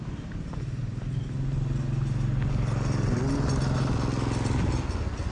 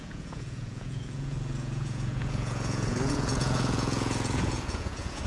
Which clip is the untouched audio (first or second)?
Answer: first